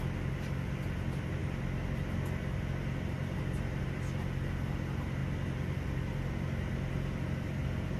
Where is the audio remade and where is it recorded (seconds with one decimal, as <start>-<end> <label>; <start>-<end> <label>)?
0.0-8.0 recorded